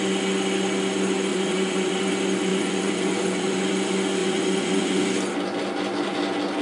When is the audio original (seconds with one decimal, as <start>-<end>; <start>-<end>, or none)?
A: 0.0-1.3; 2.0-2.5; 3.7-4.2; 5.0-6.6